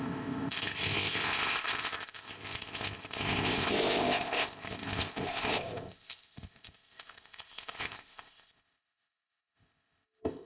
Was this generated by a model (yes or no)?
yes